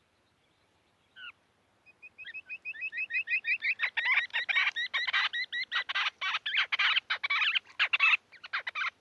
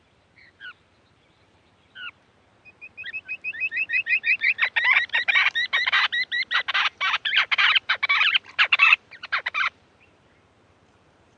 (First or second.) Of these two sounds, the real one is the first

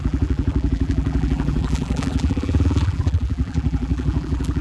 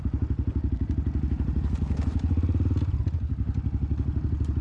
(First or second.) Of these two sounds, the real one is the second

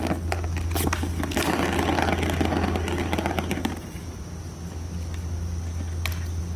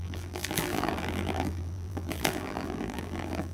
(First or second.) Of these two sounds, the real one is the first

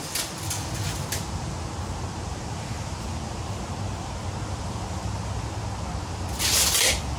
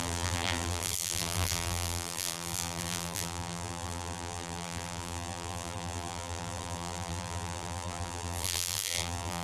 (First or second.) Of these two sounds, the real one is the first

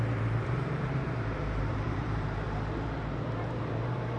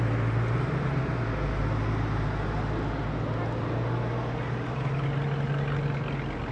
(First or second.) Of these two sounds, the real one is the second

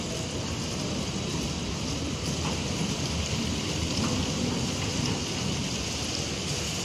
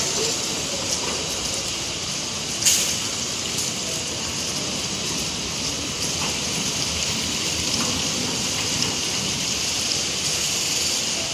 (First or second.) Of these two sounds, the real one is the first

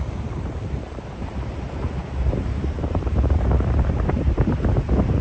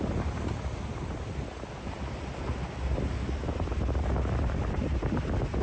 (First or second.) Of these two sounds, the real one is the second